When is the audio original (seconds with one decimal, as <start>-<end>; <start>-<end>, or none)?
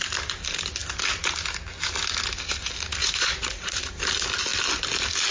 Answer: 0.0-3.0; 3.8-5.3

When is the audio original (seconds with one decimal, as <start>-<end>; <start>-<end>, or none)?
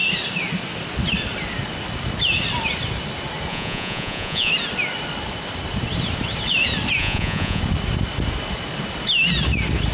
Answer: 0.0-3.5; 4.5-7.0; 7.6-9.9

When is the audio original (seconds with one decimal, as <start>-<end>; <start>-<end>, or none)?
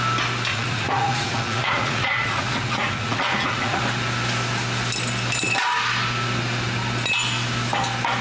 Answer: 0.0-0.5; 3.8-8.2